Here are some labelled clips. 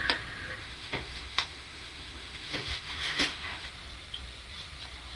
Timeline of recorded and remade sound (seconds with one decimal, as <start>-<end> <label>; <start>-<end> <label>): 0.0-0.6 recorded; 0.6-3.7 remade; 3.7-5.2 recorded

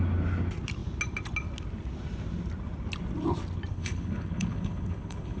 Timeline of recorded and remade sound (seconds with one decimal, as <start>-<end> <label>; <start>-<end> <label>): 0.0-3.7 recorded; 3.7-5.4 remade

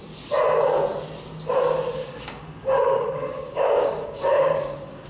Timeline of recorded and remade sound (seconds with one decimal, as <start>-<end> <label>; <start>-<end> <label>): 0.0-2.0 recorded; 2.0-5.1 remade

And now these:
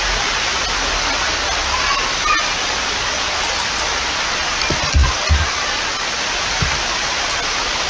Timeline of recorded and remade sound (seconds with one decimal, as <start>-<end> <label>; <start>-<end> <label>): 0.0-7.9 recorded